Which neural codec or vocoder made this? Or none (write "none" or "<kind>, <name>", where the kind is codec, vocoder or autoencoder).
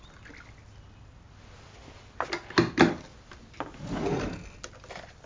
none